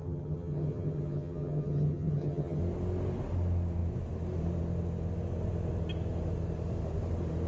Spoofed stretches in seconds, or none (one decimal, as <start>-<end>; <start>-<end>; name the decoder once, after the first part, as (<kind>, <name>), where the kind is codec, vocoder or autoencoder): 0.0-2.6 (vocoder, HiFi-GAN)